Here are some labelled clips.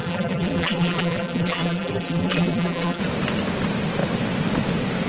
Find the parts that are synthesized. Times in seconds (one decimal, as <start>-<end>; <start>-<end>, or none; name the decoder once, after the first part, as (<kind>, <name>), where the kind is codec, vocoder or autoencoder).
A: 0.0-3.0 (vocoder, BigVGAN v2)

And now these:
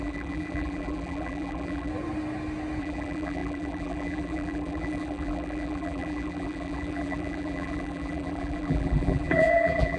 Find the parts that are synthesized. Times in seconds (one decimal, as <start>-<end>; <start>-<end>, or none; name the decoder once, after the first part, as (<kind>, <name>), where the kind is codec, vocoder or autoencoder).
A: 0.0-1.9 (vocoder, BigVGAN v2); 2.8-10.0

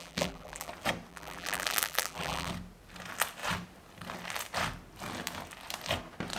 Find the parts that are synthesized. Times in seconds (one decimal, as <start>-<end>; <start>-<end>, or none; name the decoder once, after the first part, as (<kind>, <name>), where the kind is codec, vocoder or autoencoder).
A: 0.0-0.7 (vocoder, BigVGAN v2); 1.1-2.5

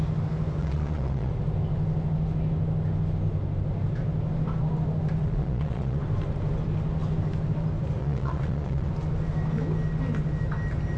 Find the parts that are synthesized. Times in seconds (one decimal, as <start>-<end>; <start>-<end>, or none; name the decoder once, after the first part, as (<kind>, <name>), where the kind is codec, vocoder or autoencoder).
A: 0.6-1.3 (vocoder, Vocos); 5.2-6.0; 8.0-8.9

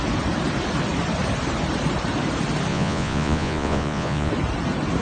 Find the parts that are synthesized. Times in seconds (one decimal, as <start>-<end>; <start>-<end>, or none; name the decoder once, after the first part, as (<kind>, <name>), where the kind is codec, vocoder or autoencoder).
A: 2.7-4.3 (vocoder, Vocos)